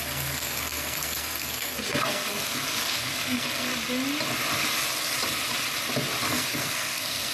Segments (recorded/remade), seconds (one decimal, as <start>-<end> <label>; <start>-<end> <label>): 0.0-3.7 remade; 3.7-6.3 recorded; 6.3-7.3 remade